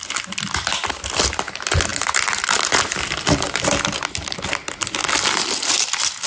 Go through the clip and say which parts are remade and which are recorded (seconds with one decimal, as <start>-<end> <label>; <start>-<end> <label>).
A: 0.0-6.3 recorded